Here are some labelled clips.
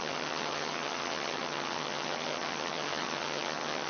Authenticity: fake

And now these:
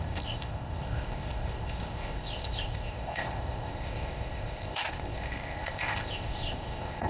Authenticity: fake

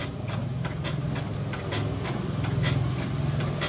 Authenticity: real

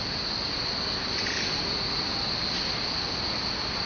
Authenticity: real